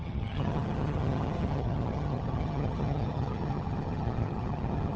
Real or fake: fake